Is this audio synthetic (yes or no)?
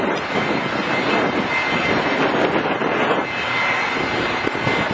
no